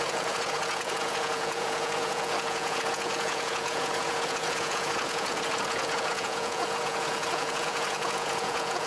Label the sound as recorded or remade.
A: remade